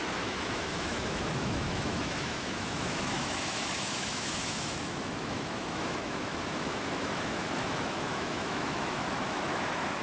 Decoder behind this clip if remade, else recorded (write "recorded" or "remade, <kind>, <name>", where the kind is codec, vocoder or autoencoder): remade, autoencoder, DAC-VAE